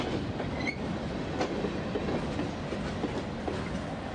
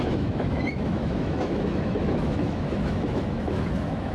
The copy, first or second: second